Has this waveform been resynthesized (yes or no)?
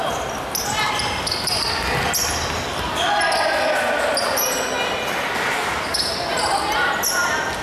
no